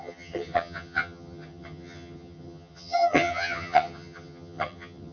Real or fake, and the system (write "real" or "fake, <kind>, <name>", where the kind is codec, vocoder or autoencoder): fake, vocoder, HiFi-GAN